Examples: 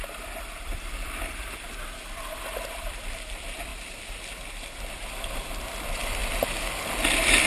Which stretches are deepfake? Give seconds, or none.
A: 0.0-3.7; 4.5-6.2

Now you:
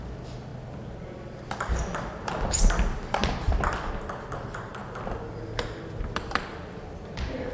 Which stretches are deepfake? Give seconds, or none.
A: 0.0-3.2; 4.2-7.5

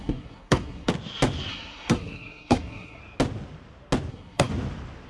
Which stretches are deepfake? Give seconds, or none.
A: 0.0-0.9; 1.5-3.0; 4.1-4.5

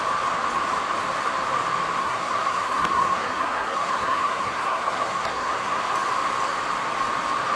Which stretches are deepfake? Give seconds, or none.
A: 2.0-5.8